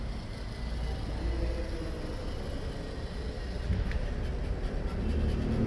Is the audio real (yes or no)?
yes